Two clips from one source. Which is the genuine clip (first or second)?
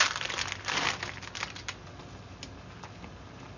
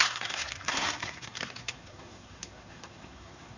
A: first